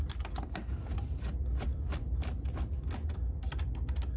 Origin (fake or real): real